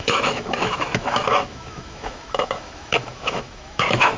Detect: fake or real fake